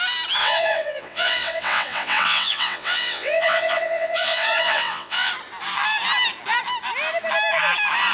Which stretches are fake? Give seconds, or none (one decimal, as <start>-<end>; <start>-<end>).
0.4-5.3